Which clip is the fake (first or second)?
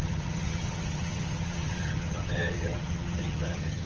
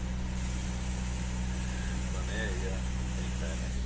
first